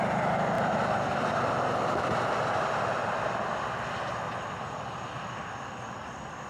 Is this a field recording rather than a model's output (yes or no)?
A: yes